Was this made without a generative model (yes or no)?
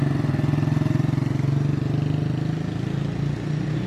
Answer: yes